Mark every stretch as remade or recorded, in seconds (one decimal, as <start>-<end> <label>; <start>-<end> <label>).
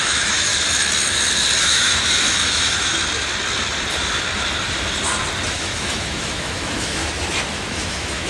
0.0-0.5 remade; 0.5-1.6 recorded; 1.6-2.9 remade; 2.9-5.5 recorded; 5.5-7.0 remade; 7.0-7.5 recorded; 7.5-8.3 remade